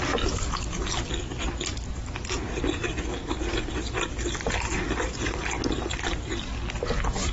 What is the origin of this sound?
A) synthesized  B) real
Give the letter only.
B